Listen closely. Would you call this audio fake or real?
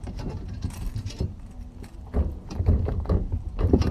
fake